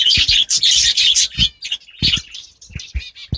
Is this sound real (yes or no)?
yes